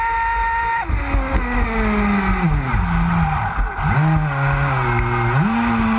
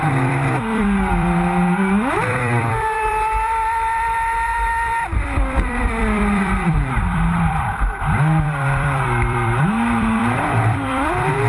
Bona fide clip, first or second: first